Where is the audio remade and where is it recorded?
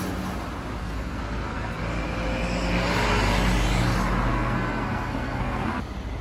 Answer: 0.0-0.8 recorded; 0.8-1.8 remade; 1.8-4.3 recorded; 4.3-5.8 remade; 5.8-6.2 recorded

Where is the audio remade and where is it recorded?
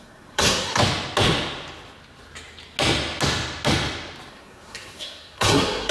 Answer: 0.0-0.8 remade; 0.8-4.3 recorded; 4.3-5.9 remade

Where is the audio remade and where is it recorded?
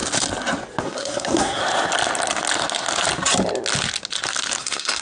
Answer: 0.0-0.8 recorded; 0.8-1.6 remade; 1.6-4.6 recorded; 4.6-5.0 remade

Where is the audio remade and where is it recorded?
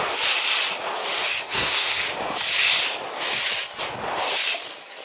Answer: 0.0-1.4 recorded; 1.4-2.0 remade; 2.0-5.0 recorded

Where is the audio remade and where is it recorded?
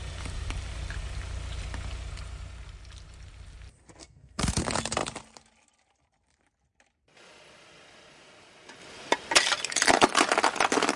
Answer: 0.0-4.0 recorded; 4.0-4.6 remade; 4.6-11.0 recorded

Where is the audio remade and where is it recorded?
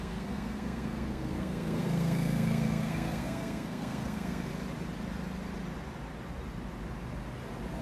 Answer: 0.0-4.5 remade; 4.5-7.8 recorded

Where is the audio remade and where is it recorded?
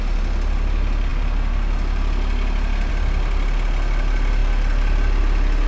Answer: 0.0-5.7 recorded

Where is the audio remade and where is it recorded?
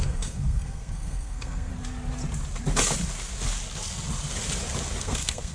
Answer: 0.0-1.7 remade; 1.7-5.0 recorded; 5.0-5.5 remade